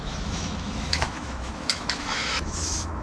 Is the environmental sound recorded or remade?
remade